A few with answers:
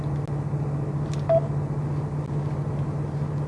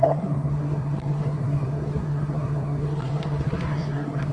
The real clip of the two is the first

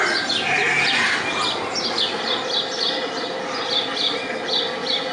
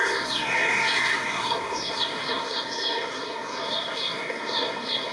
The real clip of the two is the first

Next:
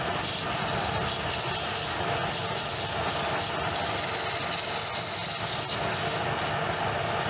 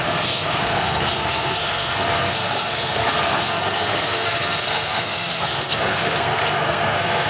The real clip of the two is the first